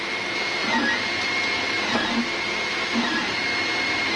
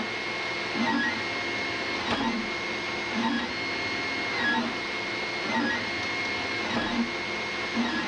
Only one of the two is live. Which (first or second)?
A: second